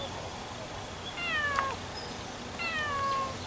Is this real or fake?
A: real